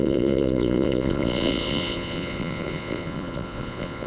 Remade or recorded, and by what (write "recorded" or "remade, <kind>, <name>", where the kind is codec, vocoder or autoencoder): remade, vocoder, Vocos